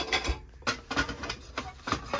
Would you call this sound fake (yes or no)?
no